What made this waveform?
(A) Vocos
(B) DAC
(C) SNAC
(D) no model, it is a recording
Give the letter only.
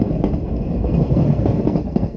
C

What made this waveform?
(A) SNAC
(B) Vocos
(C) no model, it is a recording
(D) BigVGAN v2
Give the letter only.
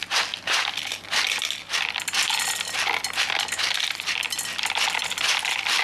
C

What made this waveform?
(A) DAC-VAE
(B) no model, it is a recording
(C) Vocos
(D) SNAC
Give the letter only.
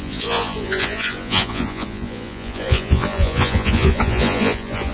C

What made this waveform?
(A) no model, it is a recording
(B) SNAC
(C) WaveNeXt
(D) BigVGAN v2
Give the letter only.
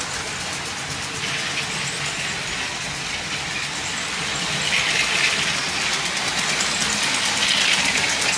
A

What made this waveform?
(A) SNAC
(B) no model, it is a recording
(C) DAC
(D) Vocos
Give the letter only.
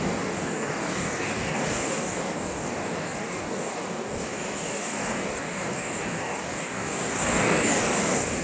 C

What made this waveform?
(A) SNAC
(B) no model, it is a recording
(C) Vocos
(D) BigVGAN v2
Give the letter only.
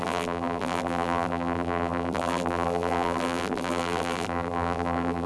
D